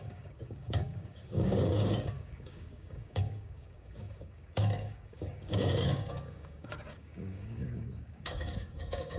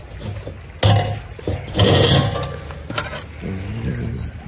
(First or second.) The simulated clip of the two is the first